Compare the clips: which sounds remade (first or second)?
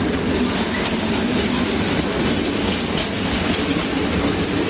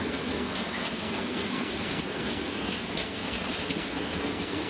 second